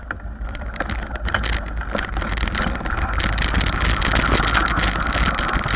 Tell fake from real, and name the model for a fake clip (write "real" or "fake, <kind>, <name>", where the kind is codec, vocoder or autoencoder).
real